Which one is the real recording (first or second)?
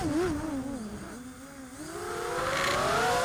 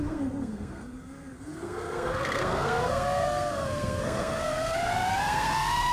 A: first